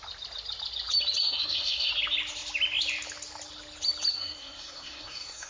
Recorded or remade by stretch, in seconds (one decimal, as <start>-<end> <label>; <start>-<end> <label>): 0.0-1.2 recorded; 1.2-1.9 remade; 1.9-4.1 recorded; 4.1-5.5 remade